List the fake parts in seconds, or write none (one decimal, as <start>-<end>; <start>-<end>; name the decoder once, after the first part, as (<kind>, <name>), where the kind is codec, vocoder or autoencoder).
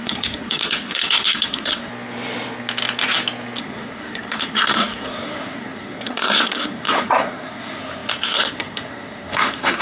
0.0-1.9 (codec, SNAC); 3.6-9.8